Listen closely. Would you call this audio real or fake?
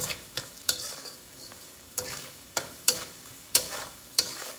fake